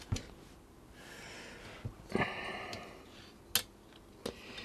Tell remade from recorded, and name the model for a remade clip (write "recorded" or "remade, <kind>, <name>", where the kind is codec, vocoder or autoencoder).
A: recorded